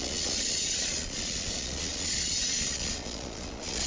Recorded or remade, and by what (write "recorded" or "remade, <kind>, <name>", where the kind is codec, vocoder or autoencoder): remade, vocoder, Vocos